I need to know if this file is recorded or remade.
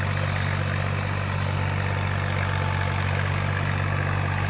recorded